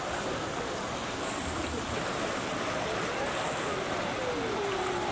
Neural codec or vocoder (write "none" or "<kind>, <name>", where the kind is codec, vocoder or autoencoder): none